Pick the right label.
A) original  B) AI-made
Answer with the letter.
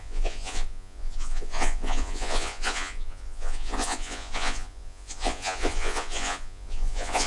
B